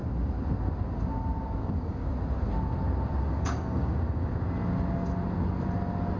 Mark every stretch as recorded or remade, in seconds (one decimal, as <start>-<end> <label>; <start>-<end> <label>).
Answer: 0.0-1.6 recorded; 1.6-2.1 remade; 2.1-3.3 recorded; 3.3-4.3 remade; 4.3-6.2 recorded